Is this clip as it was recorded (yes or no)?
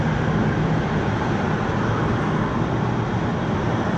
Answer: yes